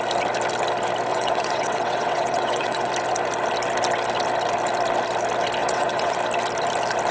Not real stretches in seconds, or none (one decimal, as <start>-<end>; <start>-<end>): 1.1-2.9; 5.6-6.2